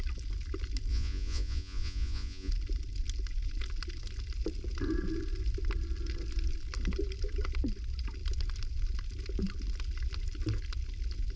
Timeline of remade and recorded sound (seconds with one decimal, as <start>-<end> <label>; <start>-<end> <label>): 0.0-0.9 recorded; 0.9-2.5 remade; 2.5-11.4 recorded